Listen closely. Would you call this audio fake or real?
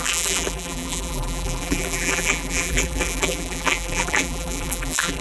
fake